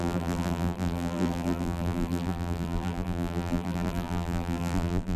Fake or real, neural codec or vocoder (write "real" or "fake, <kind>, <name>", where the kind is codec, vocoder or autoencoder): fake, vocoder, BigVGAN v2